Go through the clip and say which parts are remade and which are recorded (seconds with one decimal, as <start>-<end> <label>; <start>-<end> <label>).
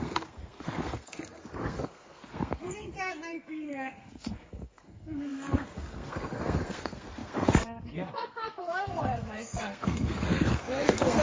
0.0-11.2 remade